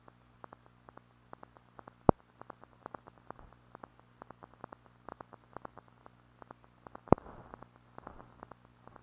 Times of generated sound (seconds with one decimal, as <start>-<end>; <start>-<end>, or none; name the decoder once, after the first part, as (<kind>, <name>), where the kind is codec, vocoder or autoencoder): none